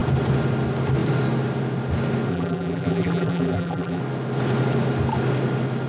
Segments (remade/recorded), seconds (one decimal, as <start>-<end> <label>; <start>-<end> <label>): 0.0-2.3 recorded; 2.3-4.0 remade; 4.0-5.9 recorded